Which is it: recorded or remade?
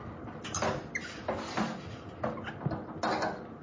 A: recorded